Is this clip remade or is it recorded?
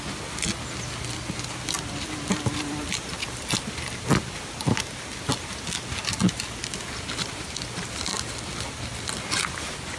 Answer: recorded